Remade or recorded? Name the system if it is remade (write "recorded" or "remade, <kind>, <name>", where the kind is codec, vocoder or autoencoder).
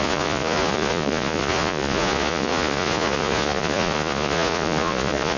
remade, vocoder, Vocos